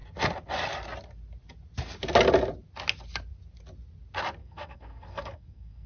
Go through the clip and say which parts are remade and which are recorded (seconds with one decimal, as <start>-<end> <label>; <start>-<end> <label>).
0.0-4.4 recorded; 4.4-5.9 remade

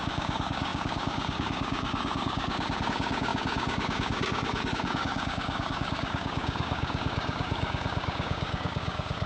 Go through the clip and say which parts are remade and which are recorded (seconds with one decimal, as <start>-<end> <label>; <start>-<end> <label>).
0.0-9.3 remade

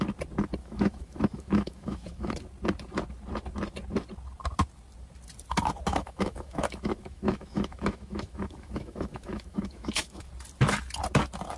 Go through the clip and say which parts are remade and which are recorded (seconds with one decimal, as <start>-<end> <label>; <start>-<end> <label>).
0.0-0.6 recorded; 0.6-2.3 remade; 2.3-5.9 recorded; 5.9-10.3 remade; 10.3-11.6 recorded

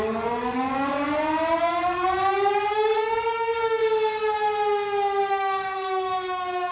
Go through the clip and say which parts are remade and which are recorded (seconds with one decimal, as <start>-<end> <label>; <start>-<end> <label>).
0.0-0.9 remade; 0.9-1.6 recorded; 1.6-3.8 remade; 3.8-5.3 recorded; 5.3-6.7 remade

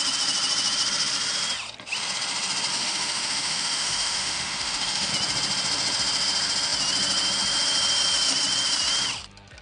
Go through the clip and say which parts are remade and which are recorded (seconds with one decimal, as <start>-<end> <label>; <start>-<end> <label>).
0.0-2.7 recorded; 2.7-5.1 remade; 5.1-9.6 recorded